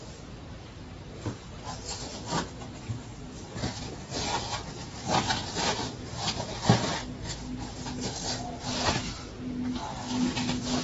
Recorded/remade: recorded